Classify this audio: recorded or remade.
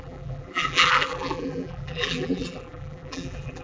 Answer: remade